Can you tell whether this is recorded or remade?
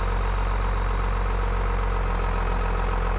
recorded